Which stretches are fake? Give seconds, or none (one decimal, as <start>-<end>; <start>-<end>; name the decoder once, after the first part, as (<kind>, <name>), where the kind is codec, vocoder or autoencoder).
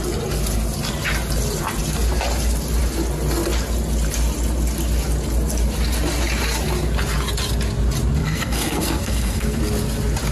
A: 8.2-9.6 (codec, SNAC)